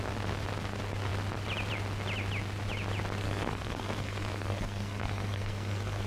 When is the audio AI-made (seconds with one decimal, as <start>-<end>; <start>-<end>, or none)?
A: 3.2-6.1

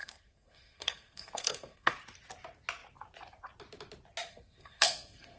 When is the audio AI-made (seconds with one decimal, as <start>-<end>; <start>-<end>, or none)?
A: 0.0-1.9; 4.3-5.4

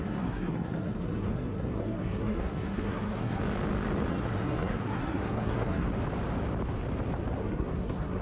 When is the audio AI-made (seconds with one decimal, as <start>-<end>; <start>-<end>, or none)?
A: 0.0-3.4; 4.1-5.9; 7.4-8.2

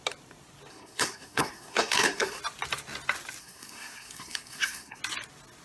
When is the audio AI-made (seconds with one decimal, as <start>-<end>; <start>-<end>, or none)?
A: 0.7-2.4; 3.4-5.0